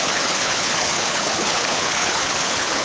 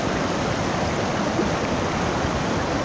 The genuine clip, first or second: second